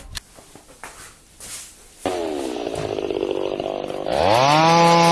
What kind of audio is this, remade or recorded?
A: recorded